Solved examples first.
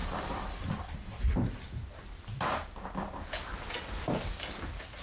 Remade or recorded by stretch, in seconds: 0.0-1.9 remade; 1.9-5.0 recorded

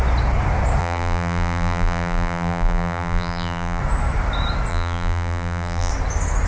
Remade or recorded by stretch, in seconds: 0.0-0.8 recorded; 0.8-3.8 remade; 3.8-4.7 recorded; 4.7-5.9 remade; 5.9-6.5 recorded